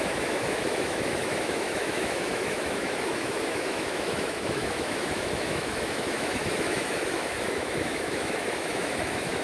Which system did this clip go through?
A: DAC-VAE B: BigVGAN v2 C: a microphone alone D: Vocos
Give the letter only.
A